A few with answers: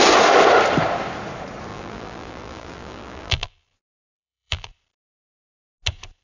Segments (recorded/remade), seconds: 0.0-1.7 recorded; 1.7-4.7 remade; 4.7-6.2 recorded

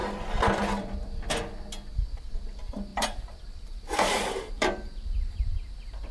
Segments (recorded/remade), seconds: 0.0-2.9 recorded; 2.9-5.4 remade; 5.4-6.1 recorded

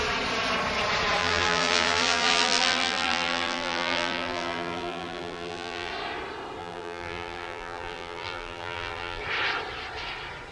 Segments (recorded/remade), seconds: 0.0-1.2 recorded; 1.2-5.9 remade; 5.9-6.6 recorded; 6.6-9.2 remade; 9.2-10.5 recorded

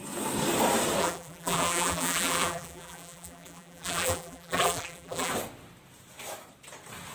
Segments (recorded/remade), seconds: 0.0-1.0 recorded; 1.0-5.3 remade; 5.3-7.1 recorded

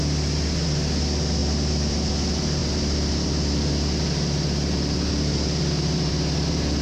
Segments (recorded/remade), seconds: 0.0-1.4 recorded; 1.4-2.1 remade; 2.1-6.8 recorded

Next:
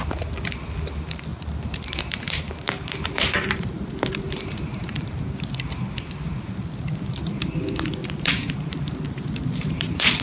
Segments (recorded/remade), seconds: 0.0-1.3 recorded; 1.3-4.1 remade; 4.1-4.8 recorded; 4.8-5.5 remade; 5.5-8.0 recorded; 8.0-10.2 remade